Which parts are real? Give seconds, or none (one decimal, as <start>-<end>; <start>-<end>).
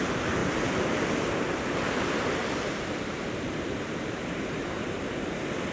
0.0-2.4; 5.0-5.7